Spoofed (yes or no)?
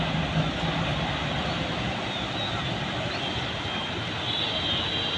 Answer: no